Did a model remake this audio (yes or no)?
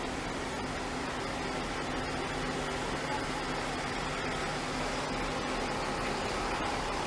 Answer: no